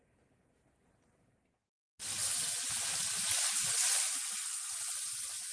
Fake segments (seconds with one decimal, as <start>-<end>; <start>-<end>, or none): 2.2-2.7